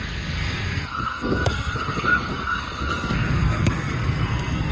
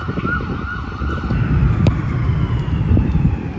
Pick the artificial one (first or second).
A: first